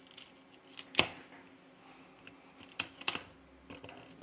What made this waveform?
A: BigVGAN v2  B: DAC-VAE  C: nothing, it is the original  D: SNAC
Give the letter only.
C